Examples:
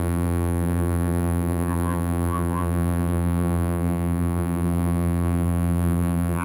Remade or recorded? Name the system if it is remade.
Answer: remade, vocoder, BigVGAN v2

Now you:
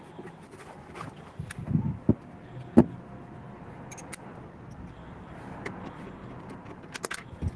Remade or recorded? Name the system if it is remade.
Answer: recorded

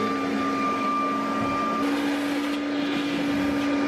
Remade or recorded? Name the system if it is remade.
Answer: recorded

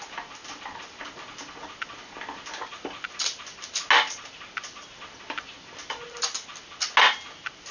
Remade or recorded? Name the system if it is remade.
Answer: recorded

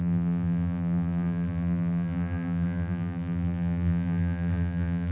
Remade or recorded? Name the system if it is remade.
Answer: remade, vocoder, BigVGAN v2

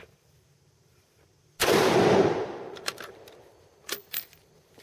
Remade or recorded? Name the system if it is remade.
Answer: remade, vocoder, BigVGAN v2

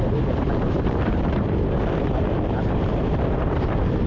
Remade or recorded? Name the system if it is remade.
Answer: remade, vocoder, BigVGAN v2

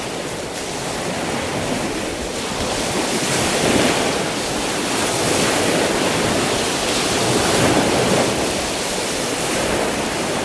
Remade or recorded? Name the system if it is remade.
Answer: recorded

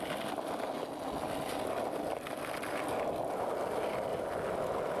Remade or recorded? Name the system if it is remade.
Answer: recorded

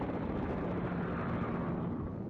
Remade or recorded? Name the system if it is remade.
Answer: recorded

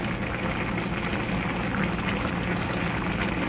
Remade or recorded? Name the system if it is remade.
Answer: recorded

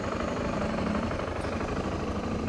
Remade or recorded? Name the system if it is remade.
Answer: remade, vocoder, BigVGAN v2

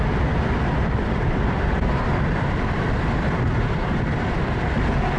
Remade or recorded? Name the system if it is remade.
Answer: remade, vocoder, BigVGAN v2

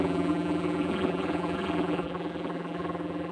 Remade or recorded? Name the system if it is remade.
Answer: remade, vocoder, BigVGAN v2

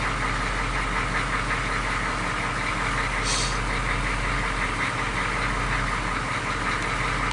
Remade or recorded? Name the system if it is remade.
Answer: recorded